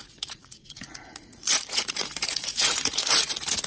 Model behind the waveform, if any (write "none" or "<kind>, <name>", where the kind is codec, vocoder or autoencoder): vocoder, Vocos